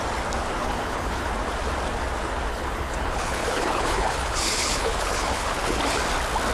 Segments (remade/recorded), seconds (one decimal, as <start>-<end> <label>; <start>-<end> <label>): 0.0-0.6 recorded; 0.6-1.3 remade; 1.3-2.5 recorded; 2.5-5.8 remade; 5.8-6.5 recorded